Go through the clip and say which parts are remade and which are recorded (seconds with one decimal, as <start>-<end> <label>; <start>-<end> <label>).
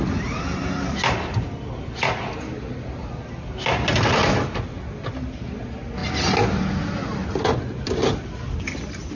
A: 0.0-9.1 recorded